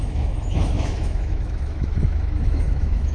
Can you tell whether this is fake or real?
fake